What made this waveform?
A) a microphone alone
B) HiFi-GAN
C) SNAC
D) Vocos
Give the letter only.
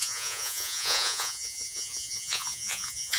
D